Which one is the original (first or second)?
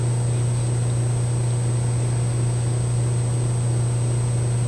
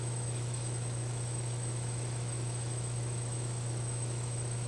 first